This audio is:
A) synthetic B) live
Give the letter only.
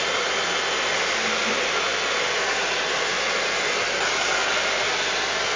B